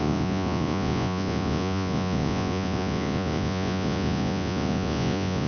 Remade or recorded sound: remade